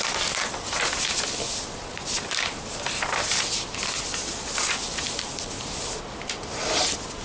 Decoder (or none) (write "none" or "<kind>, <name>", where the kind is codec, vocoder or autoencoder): none